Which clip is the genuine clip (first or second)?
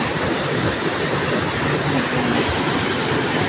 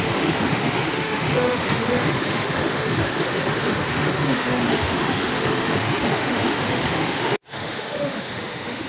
first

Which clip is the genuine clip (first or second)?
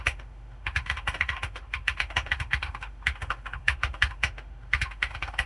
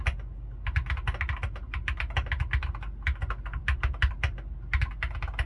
second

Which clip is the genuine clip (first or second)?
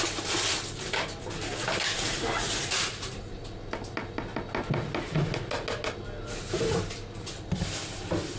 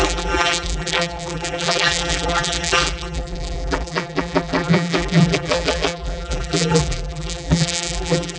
first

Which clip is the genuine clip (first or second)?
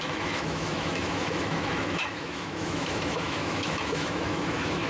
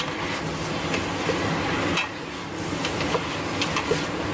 second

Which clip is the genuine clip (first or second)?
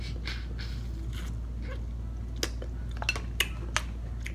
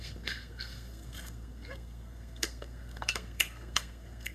first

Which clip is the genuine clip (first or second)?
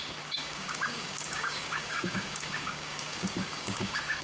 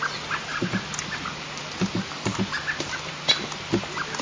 second